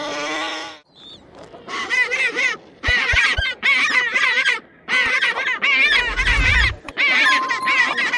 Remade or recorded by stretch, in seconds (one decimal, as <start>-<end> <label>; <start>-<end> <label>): 0.0-8.2 remade